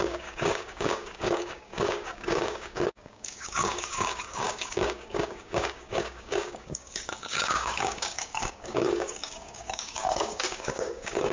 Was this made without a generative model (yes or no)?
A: no